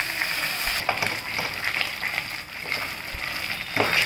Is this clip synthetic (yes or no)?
no